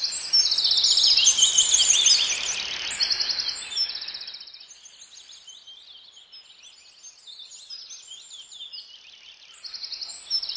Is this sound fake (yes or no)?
no